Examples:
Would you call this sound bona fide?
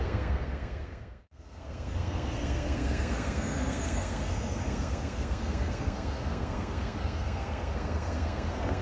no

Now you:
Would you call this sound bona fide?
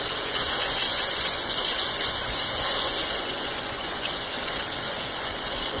no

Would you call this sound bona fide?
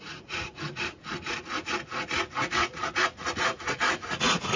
no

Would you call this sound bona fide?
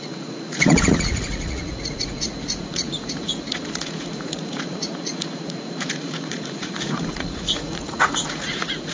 no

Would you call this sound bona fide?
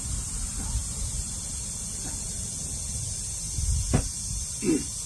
yes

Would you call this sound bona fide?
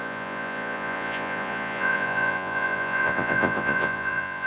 no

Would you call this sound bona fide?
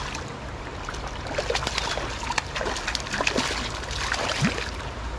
yes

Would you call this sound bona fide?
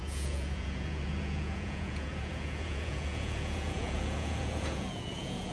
no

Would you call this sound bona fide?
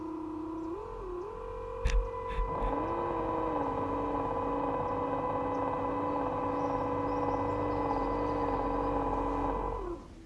yes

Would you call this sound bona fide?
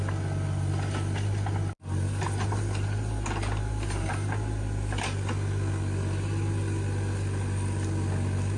yes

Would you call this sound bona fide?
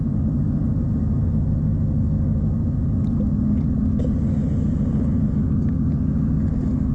yes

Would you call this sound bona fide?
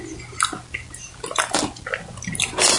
yes